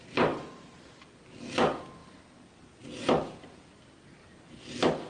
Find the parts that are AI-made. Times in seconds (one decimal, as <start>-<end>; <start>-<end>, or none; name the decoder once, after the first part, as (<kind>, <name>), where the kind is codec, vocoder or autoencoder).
none